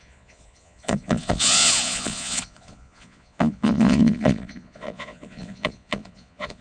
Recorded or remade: remade